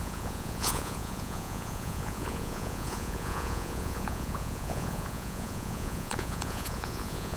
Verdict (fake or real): fake